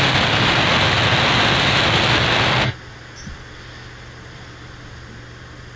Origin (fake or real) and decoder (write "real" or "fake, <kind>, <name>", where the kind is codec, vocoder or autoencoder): real